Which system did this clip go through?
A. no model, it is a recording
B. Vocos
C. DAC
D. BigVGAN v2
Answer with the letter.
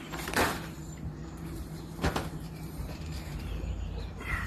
D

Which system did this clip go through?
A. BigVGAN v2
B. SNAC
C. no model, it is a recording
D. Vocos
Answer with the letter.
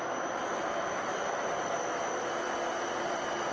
A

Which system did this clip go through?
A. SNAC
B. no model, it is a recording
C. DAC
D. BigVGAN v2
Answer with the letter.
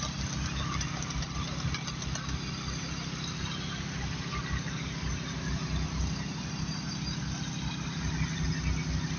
B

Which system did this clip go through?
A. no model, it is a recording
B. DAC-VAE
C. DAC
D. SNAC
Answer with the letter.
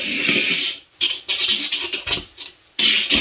A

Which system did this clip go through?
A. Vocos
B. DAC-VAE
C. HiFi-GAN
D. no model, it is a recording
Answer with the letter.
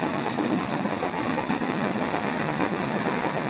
A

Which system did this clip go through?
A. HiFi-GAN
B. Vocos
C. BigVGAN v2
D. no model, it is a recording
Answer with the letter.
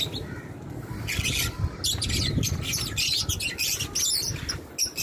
D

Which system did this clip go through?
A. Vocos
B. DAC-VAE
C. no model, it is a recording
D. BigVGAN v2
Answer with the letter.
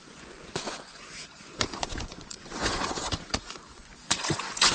A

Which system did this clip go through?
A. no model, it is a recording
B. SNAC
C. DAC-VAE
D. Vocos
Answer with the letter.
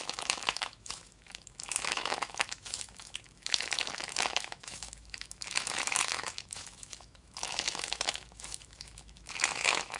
C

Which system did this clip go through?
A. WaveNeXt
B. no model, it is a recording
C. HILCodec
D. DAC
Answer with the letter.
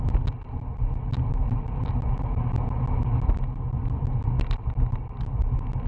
B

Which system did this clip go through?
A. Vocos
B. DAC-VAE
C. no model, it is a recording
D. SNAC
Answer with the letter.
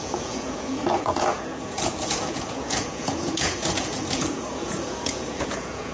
A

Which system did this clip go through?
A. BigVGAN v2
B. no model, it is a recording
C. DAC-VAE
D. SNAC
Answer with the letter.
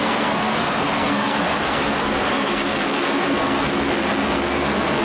D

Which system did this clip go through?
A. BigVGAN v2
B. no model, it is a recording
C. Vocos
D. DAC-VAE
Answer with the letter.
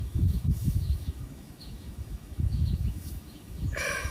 D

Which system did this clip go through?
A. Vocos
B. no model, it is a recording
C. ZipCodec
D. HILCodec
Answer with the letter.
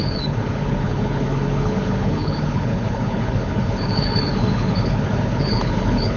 D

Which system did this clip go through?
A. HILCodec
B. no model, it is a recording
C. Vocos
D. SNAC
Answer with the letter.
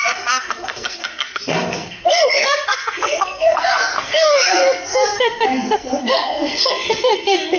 D